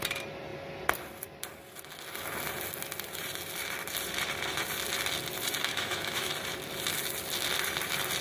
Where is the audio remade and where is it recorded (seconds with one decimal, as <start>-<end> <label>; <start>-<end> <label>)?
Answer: 0.0-5.7 recorded; 5.7-6.3 remade; 6.3-8.2 recorded